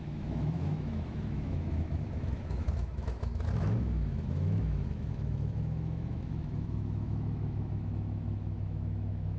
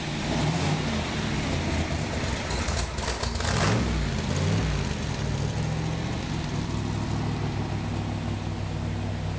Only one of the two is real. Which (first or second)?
second